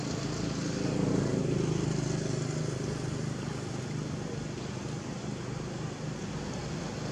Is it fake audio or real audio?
real